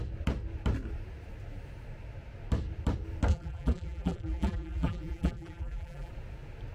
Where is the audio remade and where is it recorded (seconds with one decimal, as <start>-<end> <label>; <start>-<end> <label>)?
0.0-3.3 recorded; 3.3-6.1 remade; 6.1-6.7 recorded